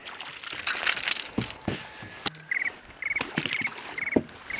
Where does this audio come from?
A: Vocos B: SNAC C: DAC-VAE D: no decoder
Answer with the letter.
D